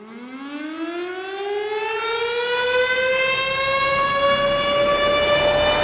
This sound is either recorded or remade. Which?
recorded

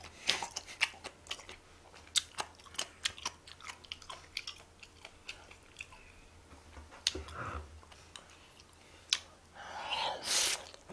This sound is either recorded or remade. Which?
recorded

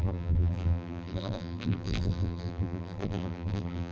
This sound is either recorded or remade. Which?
remade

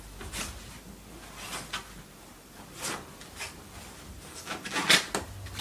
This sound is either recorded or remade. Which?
recorded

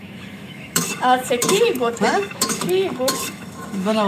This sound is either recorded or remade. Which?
remade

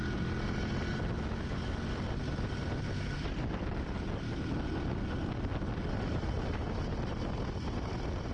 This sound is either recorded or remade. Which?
recorded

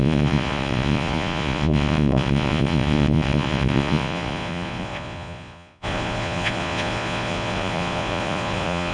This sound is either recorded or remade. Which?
remade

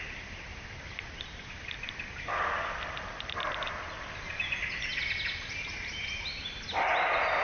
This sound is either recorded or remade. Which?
recorded